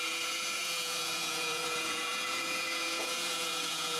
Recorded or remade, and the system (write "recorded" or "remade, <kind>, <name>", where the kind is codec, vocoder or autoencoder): remade, vocoder, Vocos